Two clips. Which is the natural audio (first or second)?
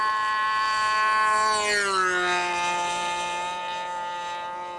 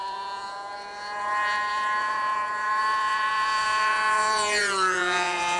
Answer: first